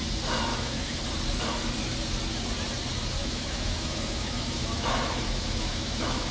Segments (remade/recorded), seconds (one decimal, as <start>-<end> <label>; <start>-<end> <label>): 0.0-0.5 recorded; 0.5-1.0 remade; 1.0-3.2 recorded; 3.2-6.3 remade